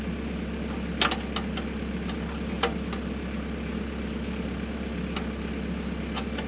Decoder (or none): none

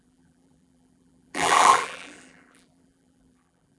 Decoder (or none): vocoder, BigVGAN v2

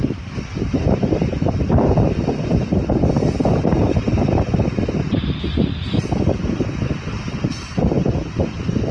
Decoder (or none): none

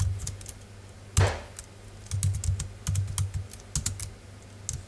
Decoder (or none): none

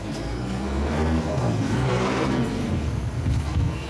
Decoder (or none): codec, SNAC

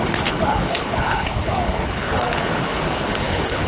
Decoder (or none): codec, HILCodec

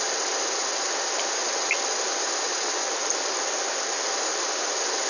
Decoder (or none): none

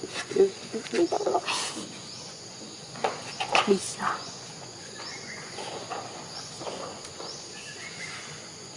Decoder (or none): vocoder, Vocos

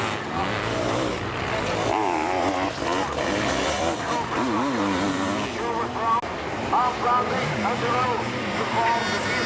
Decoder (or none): none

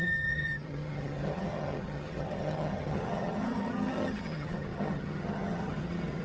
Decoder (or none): vocoder, HiFi-GAN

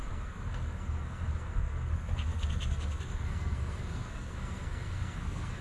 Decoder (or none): codec, SNAC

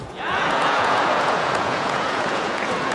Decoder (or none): vocoder, Vocos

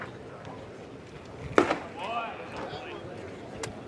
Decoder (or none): none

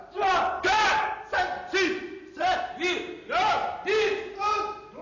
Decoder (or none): none